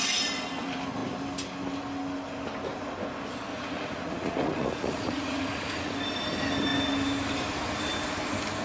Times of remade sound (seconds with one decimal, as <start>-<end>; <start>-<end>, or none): 3.5-5.9

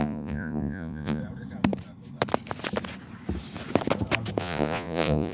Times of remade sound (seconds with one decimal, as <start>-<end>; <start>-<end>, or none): 0.0-1.2; 4.4-5.3

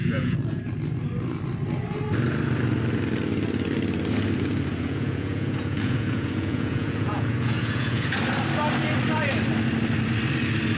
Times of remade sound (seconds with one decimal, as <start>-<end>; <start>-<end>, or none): 0.0-0.6; 4.7-8.2

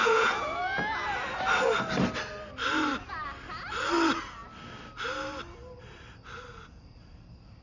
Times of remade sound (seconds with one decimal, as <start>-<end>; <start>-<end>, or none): 0.0-0.6

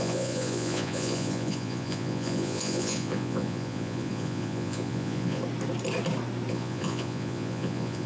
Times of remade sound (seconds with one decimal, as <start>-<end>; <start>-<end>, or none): 0.0-5.4; 6.5-8.1

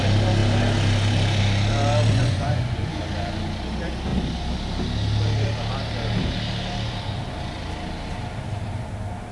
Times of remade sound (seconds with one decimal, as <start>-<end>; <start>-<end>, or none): 2.1-3.0